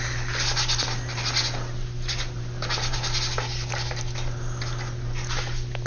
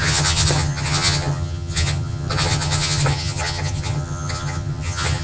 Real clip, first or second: first